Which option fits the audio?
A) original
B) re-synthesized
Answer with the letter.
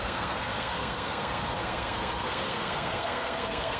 B